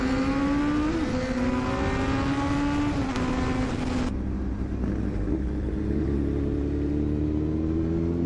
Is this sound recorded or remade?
recorded